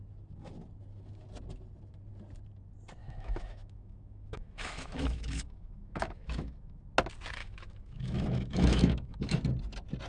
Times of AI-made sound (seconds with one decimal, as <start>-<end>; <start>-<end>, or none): 3.0-6.8; 7.4-9.4